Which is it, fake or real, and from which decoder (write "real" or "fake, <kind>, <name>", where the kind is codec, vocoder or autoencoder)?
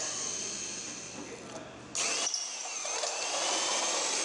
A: real